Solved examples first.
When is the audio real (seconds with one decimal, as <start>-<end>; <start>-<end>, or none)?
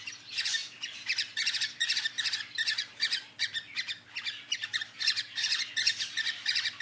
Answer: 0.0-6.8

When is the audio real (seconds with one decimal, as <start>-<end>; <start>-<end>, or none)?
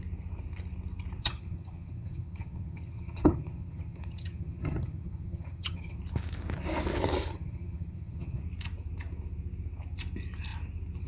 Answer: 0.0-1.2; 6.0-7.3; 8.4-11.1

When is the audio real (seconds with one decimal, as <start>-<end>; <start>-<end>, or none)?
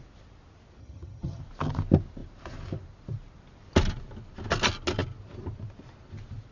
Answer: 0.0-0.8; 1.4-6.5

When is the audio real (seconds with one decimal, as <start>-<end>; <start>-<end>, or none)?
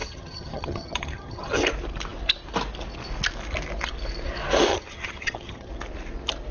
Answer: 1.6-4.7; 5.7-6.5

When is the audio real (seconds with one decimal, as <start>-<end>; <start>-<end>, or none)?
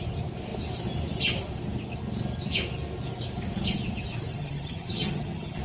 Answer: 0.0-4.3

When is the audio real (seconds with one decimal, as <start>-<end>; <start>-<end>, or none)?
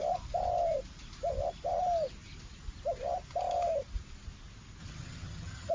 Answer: 0.0-4.8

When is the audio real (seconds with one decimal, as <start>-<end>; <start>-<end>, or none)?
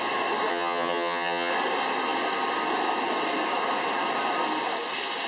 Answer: 0.0-0.5; 1.5-5.3